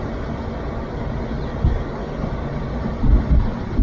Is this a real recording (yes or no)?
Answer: yes